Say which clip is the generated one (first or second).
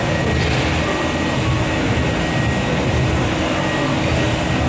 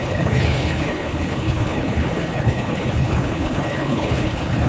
second